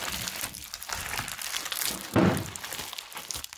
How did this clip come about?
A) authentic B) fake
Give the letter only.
B